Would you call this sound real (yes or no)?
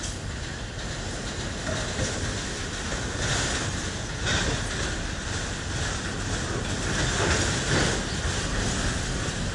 yes